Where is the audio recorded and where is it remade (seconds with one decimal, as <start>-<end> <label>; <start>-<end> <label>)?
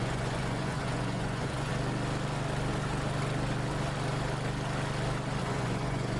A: 0.0-1.7 remade; 1.7-5.4 recorded; 5.4-6.2 remade